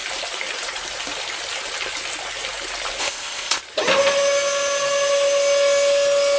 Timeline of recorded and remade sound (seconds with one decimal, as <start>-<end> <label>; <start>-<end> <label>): 0.0-3.0 recorded; 3.0-3.6 remade; 3.6-6.4 recorded